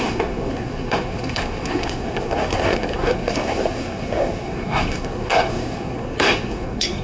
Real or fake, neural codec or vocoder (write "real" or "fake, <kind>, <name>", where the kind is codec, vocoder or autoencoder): fake, codec, SNAC